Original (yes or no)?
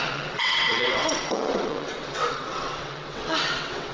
no